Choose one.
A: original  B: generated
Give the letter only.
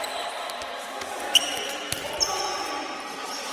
B